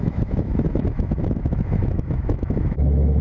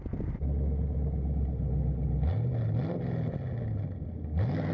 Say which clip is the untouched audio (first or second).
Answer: second